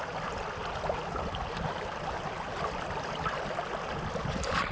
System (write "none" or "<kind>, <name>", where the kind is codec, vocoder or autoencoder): none